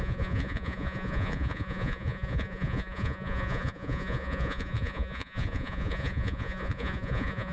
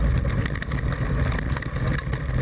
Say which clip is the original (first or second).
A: second